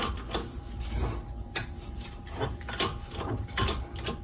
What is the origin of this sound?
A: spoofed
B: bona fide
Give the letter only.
B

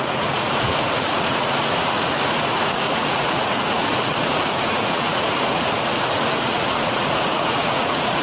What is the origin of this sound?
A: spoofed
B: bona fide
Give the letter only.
A